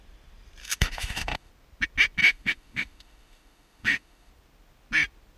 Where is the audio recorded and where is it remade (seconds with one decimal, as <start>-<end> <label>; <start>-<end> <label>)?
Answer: 0.0-0.6 recorded; 0.6-1.5 remade; 1.5-2.2 recorded; 2.2-4.3 remade; 4.3-5.4 recorded